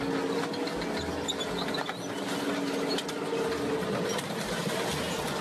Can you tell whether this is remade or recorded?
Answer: recorded